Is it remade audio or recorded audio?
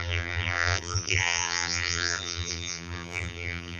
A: remade